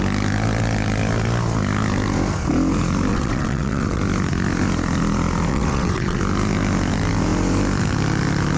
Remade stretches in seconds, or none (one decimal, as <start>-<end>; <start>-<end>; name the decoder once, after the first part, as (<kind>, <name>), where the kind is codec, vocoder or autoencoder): 3.1-4.0 (vocoder, WaveNeXt); 5.5-6.2